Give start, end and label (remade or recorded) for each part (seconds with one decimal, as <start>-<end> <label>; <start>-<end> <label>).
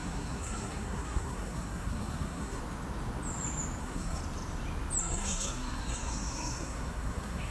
0.0-2.6 remade; 2.6-3.8 recorded; 3.8-4.2 remade; 4.2-5.0 recorded; 5.0-7.5 remade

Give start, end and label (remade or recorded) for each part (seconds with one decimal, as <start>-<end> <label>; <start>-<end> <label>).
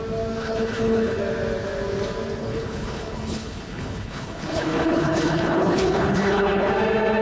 0.0-0.4 recorded; 0.4-1.2 remade; 1.2-2.4 recorded; 2.4-6.7 remade; 6.7-7.2 recorded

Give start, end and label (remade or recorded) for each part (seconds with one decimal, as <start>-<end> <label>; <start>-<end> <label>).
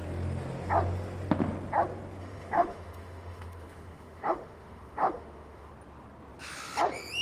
0.0-2.2 recorded; 2.2-5.7 remade; 5.7-7.2 recorded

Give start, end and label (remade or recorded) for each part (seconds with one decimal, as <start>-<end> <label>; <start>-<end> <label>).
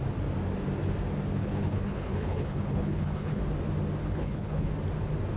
0.0-1.4 recorded; 1.4-3.4 remade; 3.4-4.0 recorded; 4.0-4.7 remade; 4.7-5.4 recorded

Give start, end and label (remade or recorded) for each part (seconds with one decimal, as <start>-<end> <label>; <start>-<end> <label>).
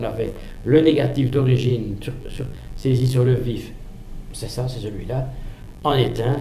0.0-1.7 remade; 1.7-2.2 recorded; 2.2-3.4 remade; 3.4-5.6 recorded; 5.6-6.4 remade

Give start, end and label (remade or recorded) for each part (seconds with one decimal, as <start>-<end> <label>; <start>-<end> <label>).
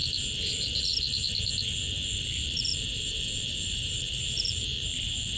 0.0-2.2 recorded; 2.2-5.4 remade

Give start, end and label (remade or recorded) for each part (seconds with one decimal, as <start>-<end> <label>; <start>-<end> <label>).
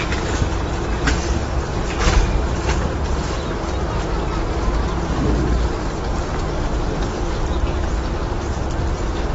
0.0-1.7 recorded; 1.7-4.0 remade; 4.0-6.3 recorded; 6.3-7.2 remade; 7.2-9.3 recorded